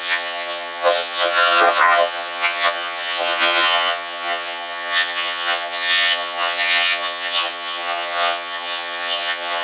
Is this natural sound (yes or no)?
no